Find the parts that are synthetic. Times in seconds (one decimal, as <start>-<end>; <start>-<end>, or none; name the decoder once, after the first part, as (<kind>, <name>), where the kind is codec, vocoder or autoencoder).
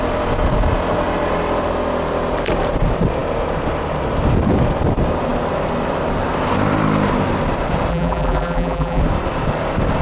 7.9-9.0 (vocoder, BigVGAN v2)